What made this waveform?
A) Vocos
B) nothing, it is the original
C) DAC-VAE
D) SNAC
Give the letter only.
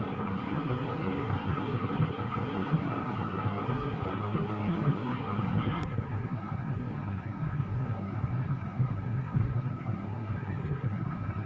D